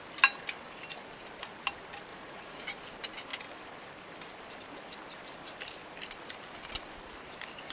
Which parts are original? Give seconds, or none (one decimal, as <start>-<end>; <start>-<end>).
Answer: 0.0-2.1; 2.6-7.7